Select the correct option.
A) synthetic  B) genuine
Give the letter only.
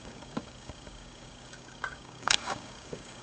A